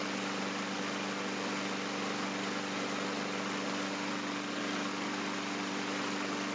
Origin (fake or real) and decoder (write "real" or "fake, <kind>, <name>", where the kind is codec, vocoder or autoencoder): real